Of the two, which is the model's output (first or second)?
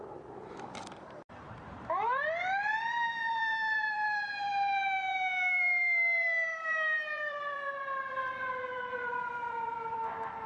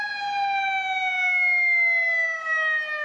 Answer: first